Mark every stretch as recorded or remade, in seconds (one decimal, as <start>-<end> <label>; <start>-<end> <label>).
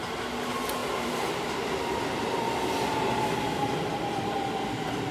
0.0-5.1 recorded